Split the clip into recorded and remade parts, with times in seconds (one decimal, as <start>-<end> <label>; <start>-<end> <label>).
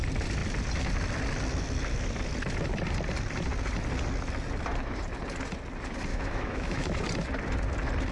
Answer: 0.0-6.1 recorded; 6.1-7.0 remade; 7.0-8.1 recorded